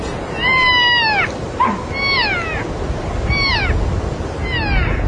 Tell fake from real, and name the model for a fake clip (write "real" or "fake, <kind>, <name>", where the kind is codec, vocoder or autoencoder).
real